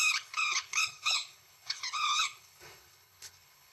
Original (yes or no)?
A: no